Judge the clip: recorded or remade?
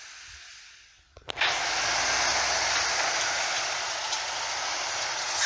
recorded